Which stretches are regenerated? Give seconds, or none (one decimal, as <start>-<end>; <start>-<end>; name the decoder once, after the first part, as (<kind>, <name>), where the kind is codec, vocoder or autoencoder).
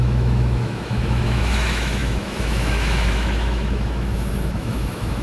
0.0-5.2 (autoencoder, DAC-VAE)